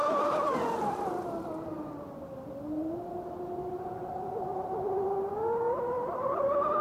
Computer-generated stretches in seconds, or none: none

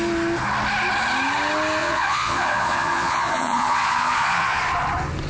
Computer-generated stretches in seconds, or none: 1.8-4.6 (vocoder, Vocos)